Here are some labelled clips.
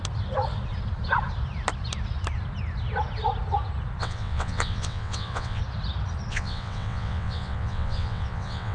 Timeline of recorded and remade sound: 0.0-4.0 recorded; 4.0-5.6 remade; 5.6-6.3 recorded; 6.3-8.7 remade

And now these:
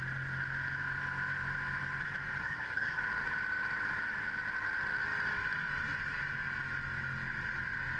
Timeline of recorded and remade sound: 0.0-2.4 recorded; 2.4-3.0 remade; 3.0-8.0 recorded

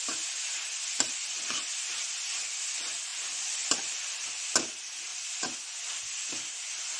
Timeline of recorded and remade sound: 0.0-7.0 recorded

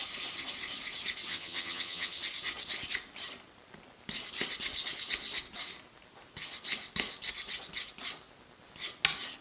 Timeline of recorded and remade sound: 0.0-1.3 recorded; 1.3-2.2 remade; 2.2-9.4 recorded

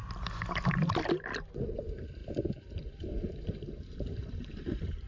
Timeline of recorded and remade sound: 0.0-1.5 recorded; 1.5-5.1 remade

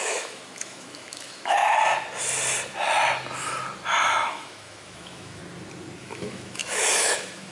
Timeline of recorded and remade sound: 0.0-1.6 remade; 1.6-4.3 recorded; 4.3-5.4 remade; 5.4-6.0 recorded; 6.0-7.5 remade

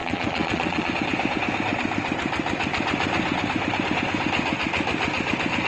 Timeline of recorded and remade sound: 0.0-0.9 remade; 0.9-5.7 recorded